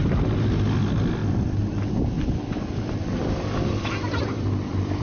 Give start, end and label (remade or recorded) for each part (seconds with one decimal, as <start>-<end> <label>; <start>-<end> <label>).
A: 0.0-1.2 remade; 1.2-4.2 recorded; 4.2-5.0 remade